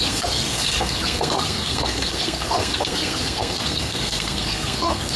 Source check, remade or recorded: remade